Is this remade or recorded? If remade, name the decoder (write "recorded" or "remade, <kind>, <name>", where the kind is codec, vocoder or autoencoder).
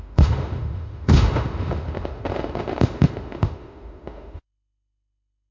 remade, autoencoder, DAC-VAE